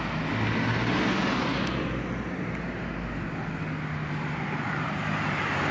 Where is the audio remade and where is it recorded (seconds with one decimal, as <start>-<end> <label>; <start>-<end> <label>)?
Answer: 0.0-5.7 recorded